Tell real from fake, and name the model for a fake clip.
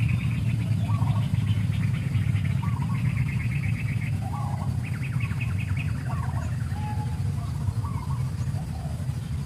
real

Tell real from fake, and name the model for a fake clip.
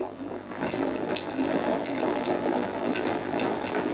fake, vocoder, BigVGAN v2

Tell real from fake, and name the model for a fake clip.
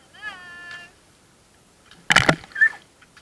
real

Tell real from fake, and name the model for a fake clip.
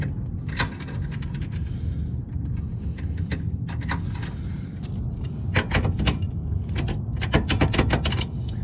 real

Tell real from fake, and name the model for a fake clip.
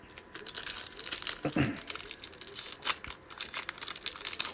real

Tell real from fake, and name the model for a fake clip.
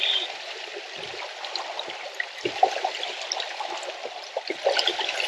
real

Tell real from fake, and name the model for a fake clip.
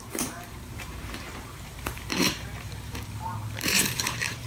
fake, vocoder, BigVGAN v2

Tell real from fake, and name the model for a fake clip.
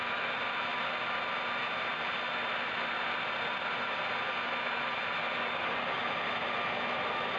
real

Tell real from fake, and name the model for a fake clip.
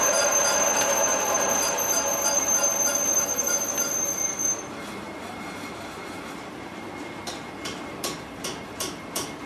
fake, vocoder, BigVGAN v2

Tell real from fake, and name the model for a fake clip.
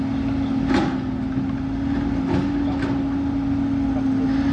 real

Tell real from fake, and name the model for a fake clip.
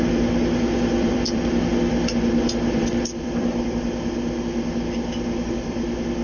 fake, vocoder, BigVGAN v2